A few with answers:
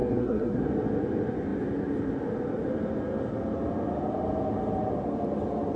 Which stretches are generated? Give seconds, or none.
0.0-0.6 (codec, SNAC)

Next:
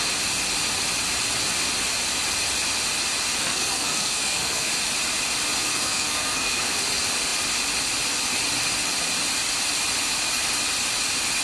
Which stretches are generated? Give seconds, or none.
3.4-4.7 (codec, SNAC); 5.7-6.8

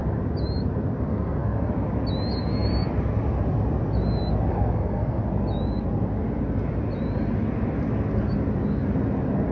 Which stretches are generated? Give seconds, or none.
1.1-1.7 (codec, SNAC); 4.5-5.2

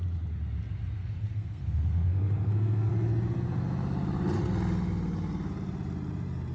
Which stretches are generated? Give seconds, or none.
1.0-2.9 (codec, SNAC)

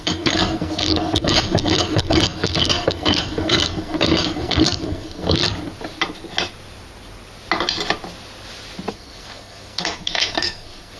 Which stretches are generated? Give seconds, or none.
0.0-5.4 (codec, SNAC); 8.9-11.0